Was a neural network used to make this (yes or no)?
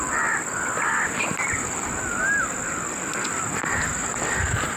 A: yes